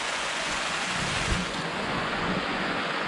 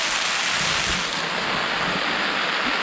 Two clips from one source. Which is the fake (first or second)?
first